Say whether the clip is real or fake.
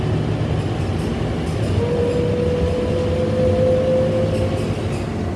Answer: real